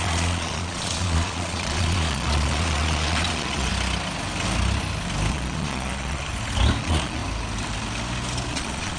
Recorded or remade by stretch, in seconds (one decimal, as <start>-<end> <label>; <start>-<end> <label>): 0.0-3.7 remade; 3.7-5.3 recorded; 5.3-6.3 remade; 6.3-6.8 recorded; 6.8-7.2 remade; 7.2-8.5 recorded; 8.5-9.0 remade